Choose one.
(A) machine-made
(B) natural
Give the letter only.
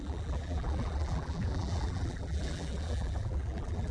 A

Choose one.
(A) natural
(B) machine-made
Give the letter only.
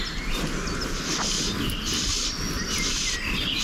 A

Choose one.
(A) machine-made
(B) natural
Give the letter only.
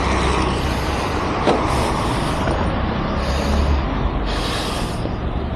B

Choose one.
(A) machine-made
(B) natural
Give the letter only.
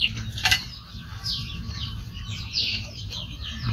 A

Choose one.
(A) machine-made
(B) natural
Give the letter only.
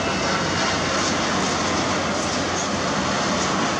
B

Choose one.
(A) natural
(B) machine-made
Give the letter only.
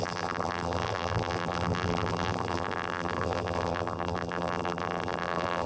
B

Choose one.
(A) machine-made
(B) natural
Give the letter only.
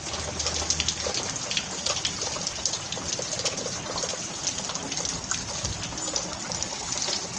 B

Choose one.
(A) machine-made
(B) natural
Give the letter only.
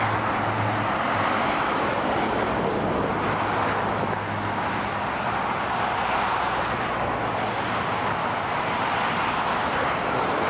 B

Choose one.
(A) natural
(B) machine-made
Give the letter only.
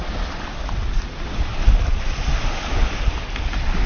A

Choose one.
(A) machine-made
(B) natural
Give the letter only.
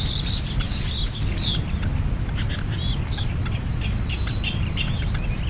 B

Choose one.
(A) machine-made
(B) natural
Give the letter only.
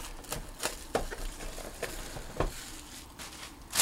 B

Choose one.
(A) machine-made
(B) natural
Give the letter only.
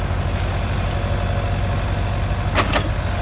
B